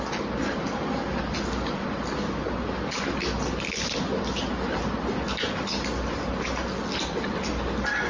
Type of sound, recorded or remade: recorded